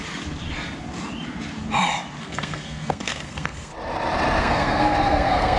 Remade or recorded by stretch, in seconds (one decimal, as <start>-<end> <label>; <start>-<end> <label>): 0.0-2.2 recorded; 2.2-3.7 remade; 3.7-4.4 recorded; 4.4-5.6 remade